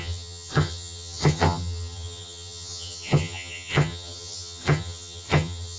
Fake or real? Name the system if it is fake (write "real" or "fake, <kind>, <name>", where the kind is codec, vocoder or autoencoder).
fake, vocoder, HiFi-GAN